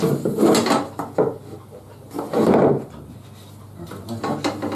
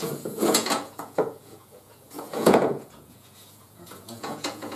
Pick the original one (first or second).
first